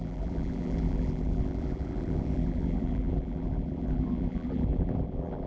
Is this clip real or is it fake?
fake